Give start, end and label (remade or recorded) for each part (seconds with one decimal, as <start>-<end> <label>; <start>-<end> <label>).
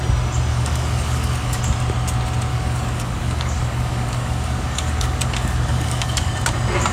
0.0-0.5 recorded; 0.5-1.6 remade; 1.6-2.5 recorded; 2.5-6.3 remade; 6.3-6.9 recorded